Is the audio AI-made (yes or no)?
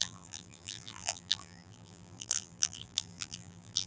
yes